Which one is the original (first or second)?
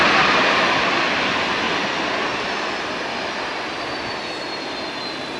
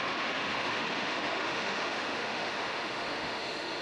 first